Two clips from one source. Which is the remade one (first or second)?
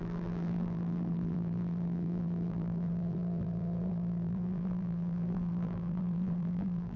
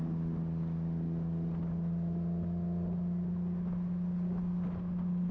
first